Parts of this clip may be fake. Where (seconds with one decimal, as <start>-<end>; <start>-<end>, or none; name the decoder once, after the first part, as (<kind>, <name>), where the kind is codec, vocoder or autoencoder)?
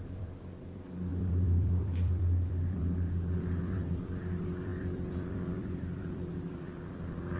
0.0-7.4 (vocoder, BigVGAN v2)